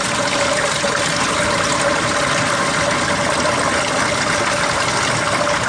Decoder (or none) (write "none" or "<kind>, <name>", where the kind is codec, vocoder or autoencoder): none